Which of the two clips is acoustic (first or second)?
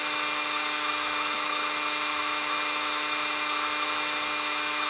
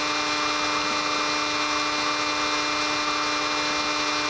second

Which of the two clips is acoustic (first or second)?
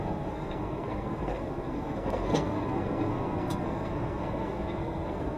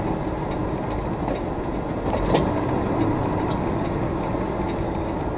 second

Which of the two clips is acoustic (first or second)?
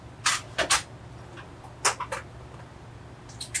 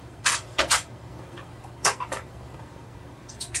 first